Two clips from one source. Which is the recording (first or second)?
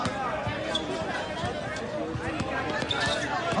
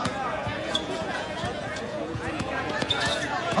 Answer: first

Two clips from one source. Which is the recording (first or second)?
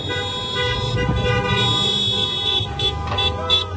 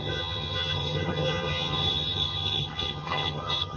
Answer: first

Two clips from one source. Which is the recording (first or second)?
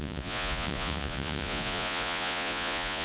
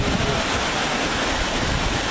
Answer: second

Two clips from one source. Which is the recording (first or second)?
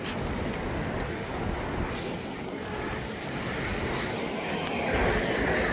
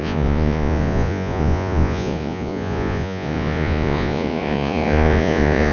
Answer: first